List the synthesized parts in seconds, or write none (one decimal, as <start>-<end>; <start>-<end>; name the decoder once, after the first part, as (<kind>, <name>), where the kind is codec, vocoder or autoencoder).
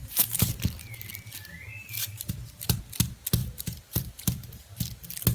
0.0-0.6 (vocoder, BigVGAN v2); 2.0-2.8; 3.4-4.8